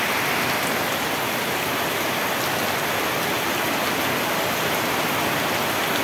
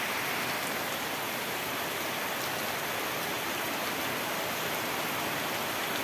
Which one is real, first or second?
first